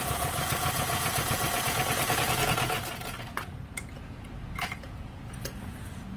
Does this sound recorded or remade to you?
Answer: remade